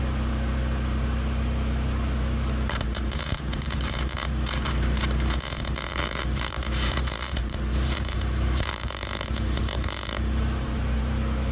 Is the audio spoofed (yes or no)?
yes